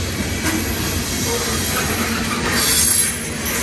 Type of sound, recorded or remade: recorded